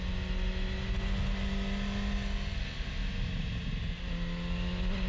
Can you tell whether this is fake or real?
real